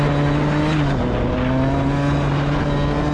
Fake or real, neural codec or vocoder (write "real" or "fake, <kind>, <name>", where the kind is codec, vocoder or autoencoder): real